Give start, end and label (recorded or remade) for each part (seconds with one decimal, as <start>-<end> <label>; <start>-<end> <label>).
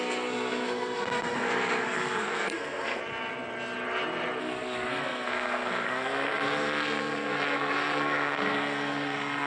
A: 0.0-3.0 remade; 3.0-4.4 recorded; 4.4-9.5 remade